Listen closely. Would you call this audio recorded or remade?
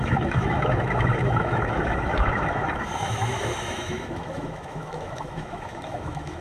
remade